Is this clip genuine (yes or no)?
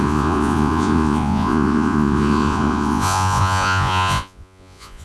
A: no